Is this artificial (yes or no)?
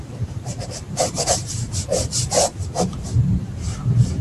yes